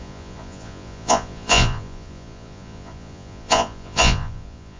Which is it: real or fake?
fake